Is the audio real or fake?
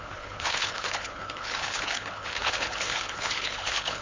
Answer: fake